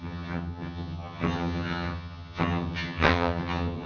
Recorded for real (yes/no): no